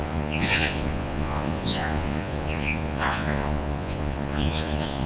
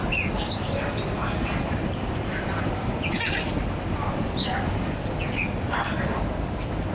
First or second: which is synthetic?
first